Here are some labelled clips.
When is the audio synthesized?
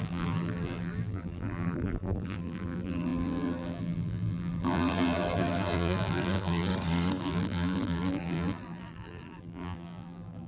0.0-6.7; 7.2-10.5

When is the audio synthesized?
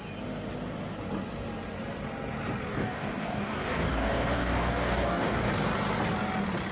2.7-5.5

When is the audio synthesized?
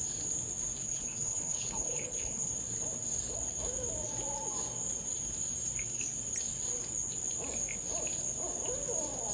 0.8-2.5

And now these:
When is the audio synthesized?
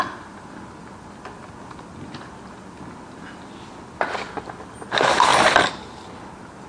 none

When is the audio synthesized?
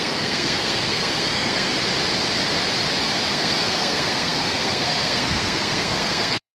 0.0-1.7; 3.3-6.5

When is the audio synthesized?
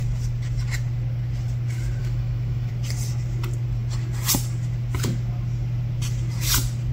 2.0-2.7